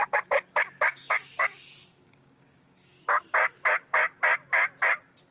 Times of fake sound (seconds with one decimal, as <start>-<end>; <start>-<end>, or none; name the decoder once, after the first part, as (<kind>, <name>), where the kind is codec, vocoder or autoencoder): 0.9-3.2 (codec, DAC)